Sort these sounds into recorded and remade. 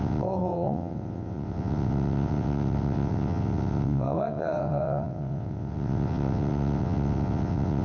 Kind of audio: remade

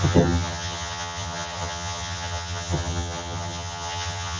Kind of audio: remade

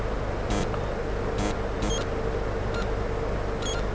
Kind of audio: recorded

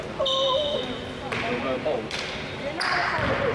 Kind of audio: recorded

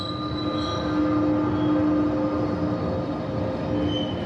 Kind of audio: recorded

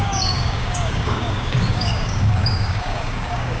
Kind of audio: remade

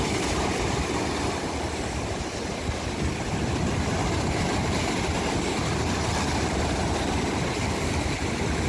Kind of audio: recorded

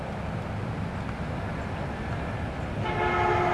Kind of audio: recorded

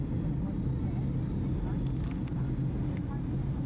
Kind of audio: recorded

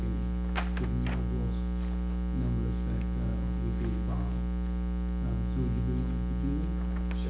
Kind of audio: recorded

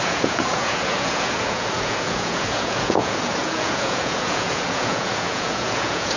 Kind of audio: remade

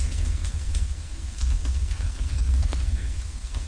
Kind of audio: remade